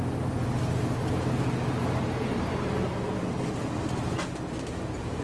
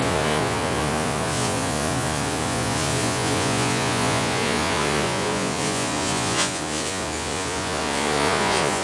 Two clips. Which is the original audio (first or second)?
first